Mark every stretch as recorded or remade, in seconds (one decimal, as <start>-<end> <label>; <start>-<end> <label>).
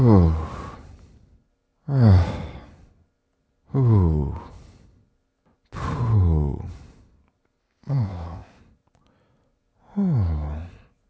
0.0-7.6 recorded; 7.6-8.6 remade; 8.6-11.1 recorded